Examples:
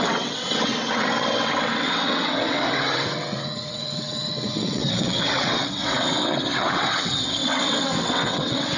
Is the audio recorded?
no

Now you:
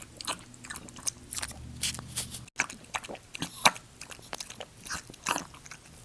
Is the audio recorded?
yes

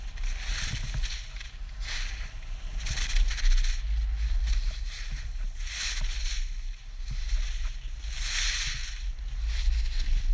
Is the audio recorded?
yes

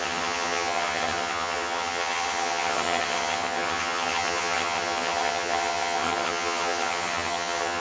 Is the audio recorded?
no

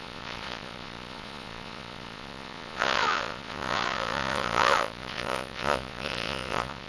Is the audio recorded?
no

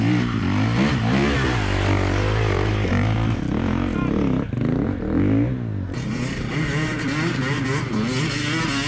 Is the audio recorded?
yes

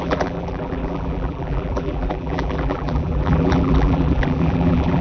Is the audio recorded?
no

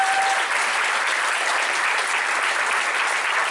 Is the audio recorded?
yes